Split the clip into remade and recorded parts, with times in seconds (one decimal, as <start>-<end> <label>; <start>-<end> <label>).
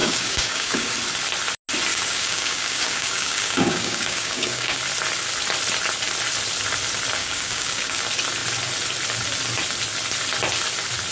0.0-0.9 remade; 0.9-1.9 recorded; 1.9-4.8 remade; 4.8-7.2 recorded; 7.2-8.0 remade; 8.0-11.1 recorded